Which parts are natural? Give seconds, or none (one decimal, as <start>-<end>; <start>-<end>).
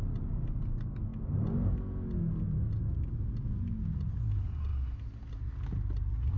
0.0-6.4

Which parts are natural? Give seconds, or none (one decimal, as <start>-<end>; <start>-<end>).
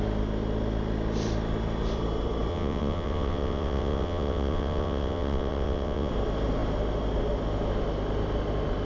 0.0-2.5; 6.1-8.8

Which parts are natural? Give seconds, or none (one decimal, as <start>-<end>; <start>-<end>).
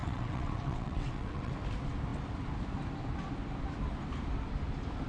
1.5-5.1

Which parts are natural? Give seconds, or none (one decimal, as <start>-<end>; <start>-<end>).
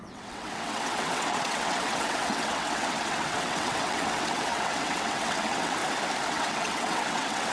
5.8-6.3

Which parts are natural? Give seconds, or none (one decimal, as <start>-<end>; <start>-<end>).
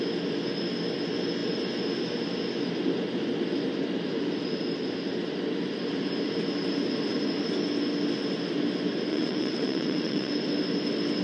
0.0-9.1; 10.3-11.2